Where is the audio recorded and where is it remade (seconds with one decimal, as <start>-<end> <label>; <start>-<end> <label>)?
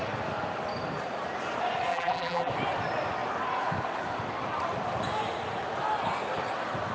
0.0-1.9 recorded; 1.9-2.5 remade; 2.5-6.9 recorded